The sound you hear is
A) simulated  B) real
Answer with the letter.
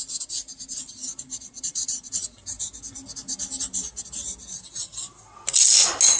B